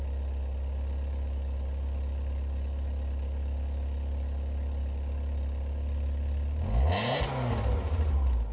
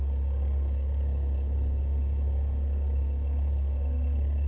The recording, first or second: first